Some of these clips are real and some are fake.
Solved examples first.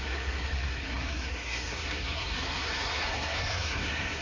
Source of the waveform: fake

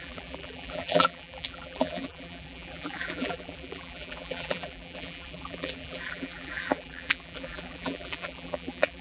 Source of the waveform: fake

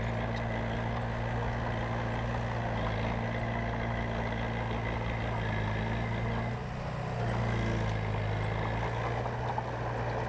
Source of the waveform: real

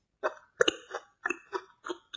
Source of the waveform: real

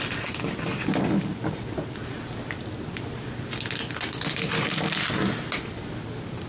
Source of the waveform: real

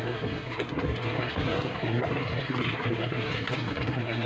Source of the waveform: fake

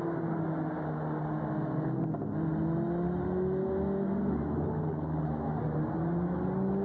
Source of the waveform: real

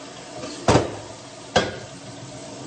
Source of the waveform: real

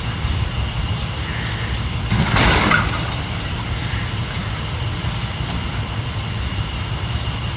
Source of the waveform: real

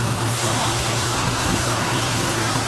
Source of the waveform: fake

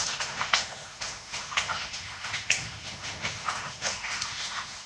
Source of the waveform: fake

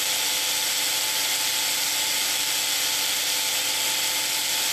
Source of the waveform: real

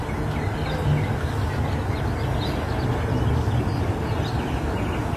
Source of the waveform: real